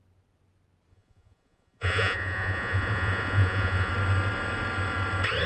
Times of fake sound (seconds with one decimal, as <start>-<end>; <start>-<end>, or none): 0.9-3.9